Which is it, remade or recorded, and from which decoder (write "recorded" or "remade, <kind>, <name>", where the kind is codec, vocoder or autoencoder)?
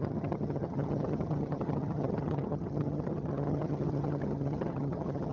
remade, vocoder, HiFi-GAN